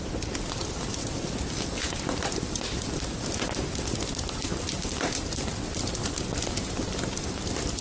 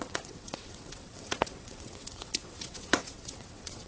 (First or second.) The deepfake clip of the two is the second